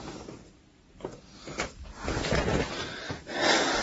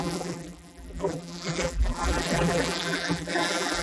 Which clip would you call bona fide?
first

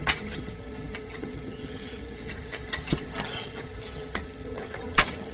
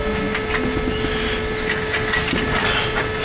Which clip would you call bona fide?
second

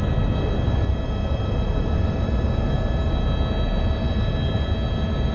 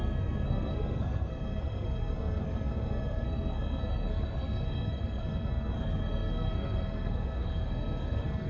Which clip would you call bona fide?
first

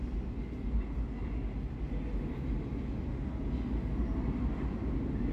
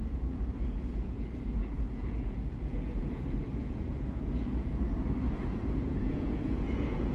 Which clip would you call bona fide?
first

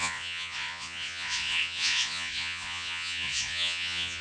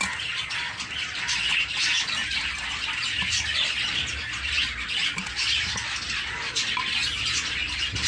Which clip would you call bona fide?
second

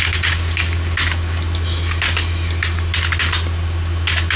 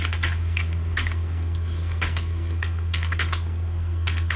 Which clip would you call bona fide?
first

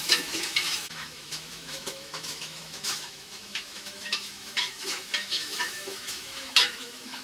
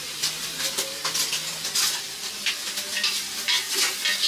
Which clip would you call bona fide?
second